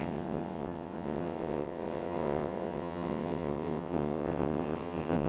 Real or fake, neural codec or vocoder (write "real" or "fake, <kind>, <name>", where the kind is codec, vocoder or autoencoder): fake, vocoder, WaveNeXt